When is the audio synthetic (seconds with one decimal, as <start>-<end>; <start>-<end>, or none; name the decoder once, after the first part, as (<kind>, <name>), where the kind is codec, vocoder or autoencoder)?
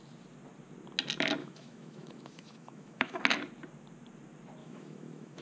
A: 1.4-3.2 (autoencoder, DAC-VAE); 4.6-5.4